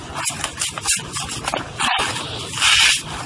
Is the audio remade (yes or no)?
no